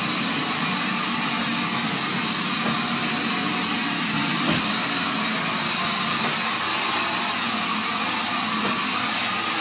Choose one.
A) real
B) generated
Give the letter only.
A